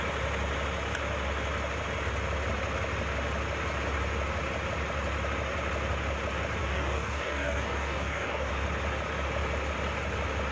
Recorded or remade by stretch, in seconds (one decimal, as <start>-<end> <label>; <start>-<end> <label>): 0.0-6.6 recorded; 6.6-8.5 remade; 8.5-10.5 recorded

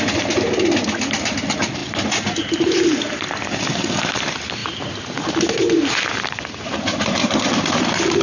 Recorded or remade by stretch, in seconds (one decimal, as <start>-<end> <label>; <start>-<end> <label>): 0.0-8.2 recorded

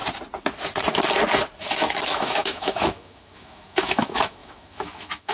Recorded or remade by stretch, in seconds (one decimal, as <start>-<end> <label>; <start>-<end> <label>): 0.0-1.6 recorded; 1.6-5.3 remade

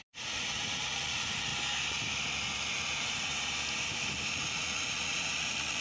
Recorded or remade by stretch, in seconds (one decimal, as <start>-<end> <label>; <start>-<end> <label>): 0.0-1.5 remade; 1.5-2.7 recorded; 2.7-3.3 remade; 3.3-4.3 recorded; 4.3-5.8 remade

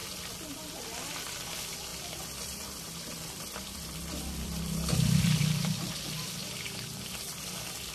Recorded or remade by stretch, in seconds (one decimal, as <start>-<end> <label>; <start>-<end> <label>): 0.0-0.5 remade; 0.5-1.9 recorded; 1.9-5.9 remade; 5.9-6.4 recorded; 6.4-7.1 remade; 7.1-7.9 recorded

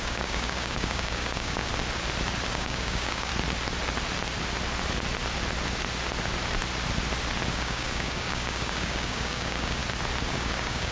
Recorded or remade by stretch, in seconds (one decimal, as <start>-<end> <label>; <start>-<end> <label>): 0.0-1.7 remade; 1.7-2.5 recorded; 2.5-3.3 remade; 3.3-7.5 recorded; 7.5-9.8 remade; 9.8-10.3 recorded; 10.3-10.9 remade

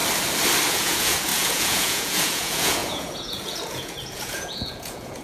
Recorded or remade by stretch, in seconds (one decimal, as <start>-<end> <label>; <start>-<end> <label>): 0.0-0.7 recorded; 0.7-5.2 remade

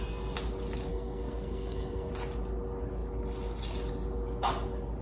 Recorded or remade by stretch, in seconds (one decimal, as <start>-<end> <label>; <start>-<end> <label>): 0.0-0.9 recorded; 0.9-2.1 remade; 2.1-5.0 recorded